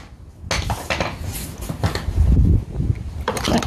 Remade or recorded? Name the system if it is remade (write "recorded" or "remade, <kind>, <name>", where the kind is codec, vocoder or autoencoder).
recorded